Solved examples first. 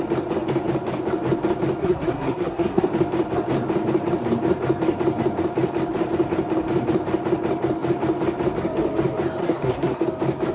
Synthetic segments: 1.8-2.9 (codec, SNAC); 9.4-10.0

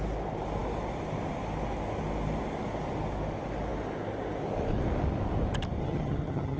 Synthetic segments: 5.8-6.6 (vocoder, HiFi-GAN)